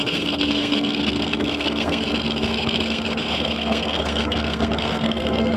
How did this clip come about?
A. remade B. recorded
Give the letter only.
A